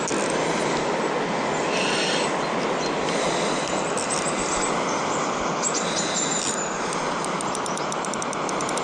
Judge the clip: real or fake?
real